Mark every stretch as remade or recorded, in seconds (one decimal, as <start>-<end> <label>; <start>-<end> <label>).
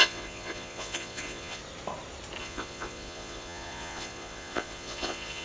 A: 0.0-1.6 remade; 1.6-2.4 recorded; 2.4-5.4 remade